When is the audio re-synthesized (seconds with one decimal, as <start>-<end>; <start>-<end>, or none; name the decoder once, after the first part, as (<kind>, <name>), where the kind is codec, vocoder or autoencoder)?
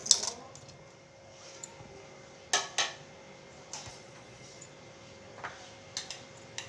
3.9-4.7 (vocoder, Vocos)